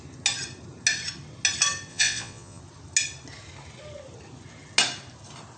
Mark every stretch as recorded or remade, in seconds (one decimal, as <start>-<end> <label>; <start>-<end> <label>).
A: 0.0-1.9 recorded; 1.9-2.6 remade; 2.6-5.6 recorded